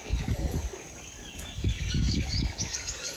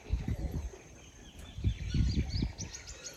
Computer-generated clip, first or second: first